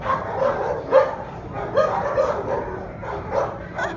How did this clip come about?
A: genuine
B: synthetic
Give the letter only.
A